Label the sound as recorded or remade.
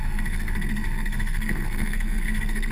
remade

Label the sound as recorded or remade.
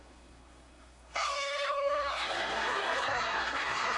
remade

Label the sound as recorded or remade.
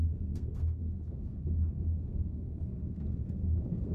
remade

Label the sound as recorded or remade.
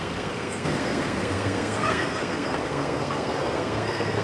remade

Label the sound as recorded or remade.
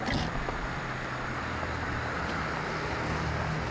recorded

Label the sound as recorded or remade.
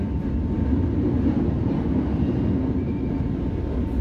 recorded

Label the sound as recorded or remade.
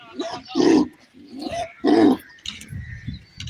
recorded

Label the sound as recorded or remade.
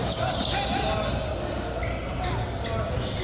recorded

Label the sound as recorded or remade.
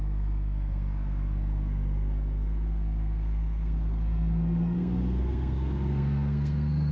remade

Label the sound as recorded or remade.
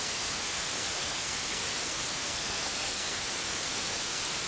remade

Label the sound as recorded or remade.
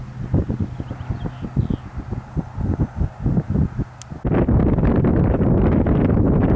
recorded